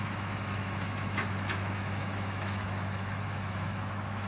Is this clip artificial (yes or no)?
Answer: yes